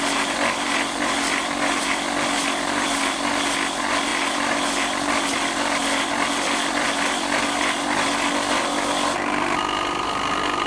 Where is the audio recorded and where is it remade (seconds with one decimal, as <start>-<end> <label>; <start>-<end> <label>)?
0.0-10.7 recorded